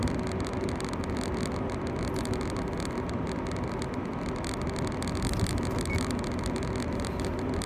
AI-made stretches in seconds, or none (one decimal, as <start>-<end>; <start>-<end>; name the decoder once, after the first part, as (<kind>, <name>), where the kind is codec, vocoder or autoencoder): none